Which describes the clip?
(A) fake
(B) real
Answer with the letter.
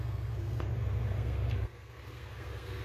A